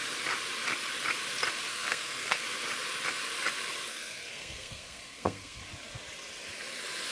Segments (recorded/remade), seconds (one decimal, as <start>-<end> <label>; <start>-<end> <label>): 0.0-1.7 recorded; 1.7-2.4 remade; 2.4-3.9 recorded; 3.9-5.6 remade; 5.6-7.1 recorded